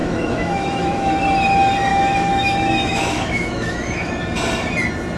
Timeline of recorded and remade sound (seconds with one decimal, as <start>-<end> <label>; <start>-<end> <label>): 0.0-1.2 remade; 1.2-1.9 recorded; 1.9-4.1 remade; 4.1-5.2 recorded